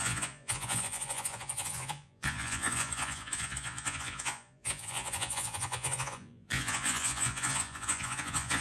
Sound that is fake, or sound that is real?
fake